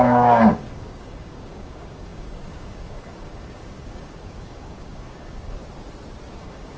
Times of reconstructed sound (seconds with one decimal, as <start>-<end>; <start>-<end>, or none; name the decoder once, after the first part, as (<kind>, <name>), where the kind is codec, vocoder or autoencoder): 0.0-5.6 (codec, DAC); 6.3-6.8